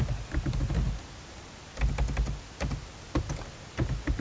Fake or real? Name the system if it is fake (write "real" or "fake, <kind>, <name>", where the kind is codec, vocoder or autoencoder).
real